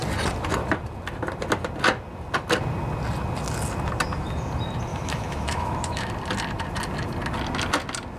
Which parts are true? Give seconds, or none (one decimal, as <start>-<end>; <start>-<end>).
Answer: 0.0-4.9; 6.1-8.2